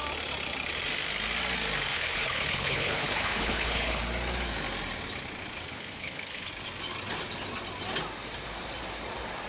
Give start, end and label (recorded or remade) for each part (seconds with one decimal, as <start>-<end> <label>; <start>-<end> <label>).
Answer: 0.0-1.9 recorded; 1.9-4.0 remade; 4.0-5.7 recorded; 5.7-6.5 remade; 6.5-9.5 recorded